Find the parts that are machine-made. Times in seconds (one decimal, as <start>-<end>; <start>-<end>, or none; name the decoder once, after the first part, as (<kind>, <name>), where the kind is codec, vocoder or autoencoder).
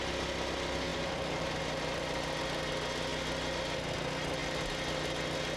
0.9-1.6 (vocoder, BigVGAN v2)